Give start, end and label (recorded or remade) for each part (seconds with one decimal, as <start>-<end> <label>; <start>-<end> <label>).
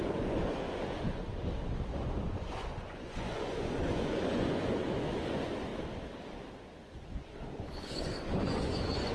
0.0-1.2 remade; 1.2-1.9 recorded; 1.9-5.7 remade; 5.7-6.8 recorded; 6.8-9.1 remade